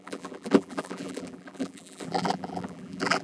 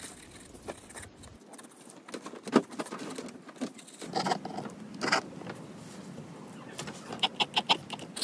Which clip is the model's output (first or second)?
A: first